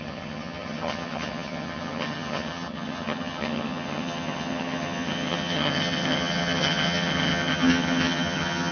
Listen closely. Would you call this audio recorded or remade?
remade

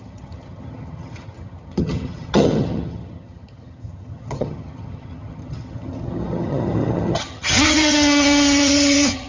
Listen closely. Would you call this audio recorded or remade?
remade